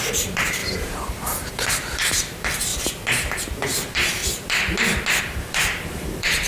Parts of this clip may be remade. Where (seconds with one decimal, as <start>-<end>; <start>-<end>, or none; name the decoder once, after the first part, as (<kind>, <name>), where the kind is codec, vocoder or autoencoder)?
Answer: 0.0-2.7 (vocoder, BigVGAN v2); 3.4-4.2; 5.2-6.5